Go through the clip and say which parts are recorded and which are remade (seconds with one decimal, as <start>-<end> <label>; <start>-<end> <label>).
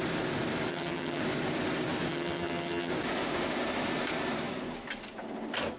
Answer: 0.0-0.7 recorded; 0.7-1.2 remade; 1.2-2.1 recorded; 2.1-2.9 remade; 2.9-5.8 recorded